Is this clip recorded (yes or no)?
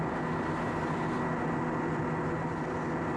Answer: yes